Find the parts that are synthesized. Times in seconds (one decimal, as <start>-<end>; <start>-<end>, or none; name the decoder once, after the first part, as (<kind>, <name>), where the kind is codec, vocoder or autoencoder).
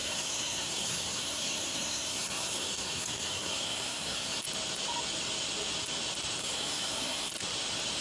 0.0-4.4 (codec, SNAC); 6.4-7.3